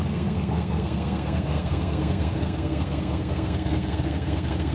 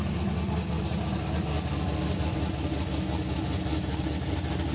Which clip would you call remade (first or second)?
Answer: first